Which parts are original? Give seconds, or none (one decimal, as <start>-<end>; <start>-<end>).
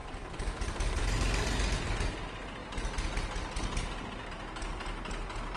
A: 1.0-5.6